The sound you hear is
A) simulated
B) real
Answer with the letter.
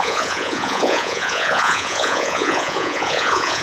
A